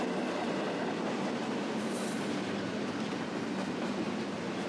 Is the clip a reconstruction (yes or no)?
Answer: no